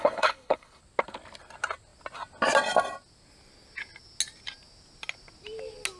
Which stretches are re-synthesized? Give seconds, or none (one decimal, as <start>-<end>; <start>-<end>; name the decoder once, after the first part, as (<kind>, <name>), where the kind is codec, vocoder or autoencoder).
0.0-0.8 (codec, HILCodec)